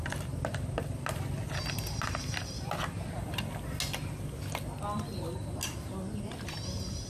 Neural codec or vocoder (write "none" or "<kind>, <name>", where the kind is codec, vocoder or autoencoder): none